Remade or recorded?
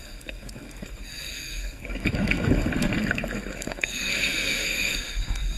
remade